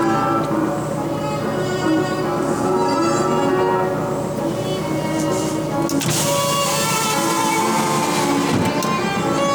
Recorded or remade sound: recorded